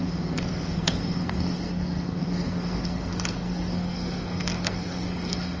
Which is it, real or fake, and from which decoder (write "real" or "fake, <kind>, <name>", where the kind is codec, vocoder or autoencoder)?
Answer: fake, codec, SNAC